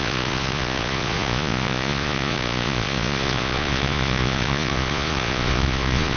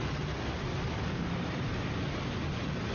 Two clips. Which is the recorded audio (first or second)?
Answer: second